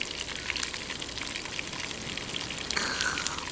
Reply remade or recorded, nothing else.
recorded